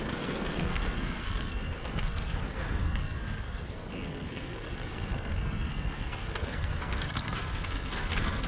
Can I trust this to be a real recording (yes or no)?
no